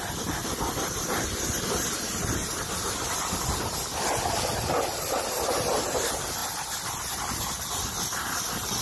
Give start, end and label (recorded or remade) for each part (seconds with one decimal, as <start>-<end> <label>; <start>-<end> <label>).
0.0-8.8 recorded